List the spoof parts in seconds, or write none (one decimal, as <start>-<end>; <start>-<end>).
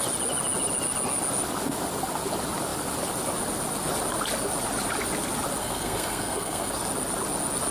5.6-6.7